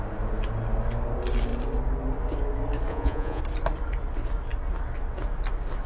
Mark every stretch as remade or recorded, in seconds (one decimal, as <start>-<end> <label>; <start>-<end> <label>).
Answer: 0.0-2.9 recorded; 2.9-3.4 remade; 3.4-5.9 recorded